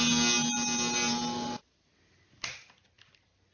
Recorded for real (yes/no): yes